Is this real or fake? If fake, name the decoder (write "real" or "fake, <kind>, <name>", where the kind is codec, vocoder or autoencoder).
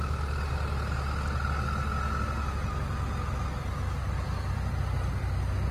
real